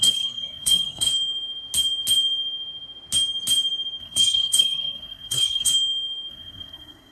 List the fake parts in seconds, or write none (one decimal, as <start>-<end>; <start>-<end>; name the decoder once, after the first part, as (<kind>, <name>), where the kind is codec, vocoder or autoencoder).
0.0-1.1 (codec, SNAC); 4.0-5.7; 6.3-7.1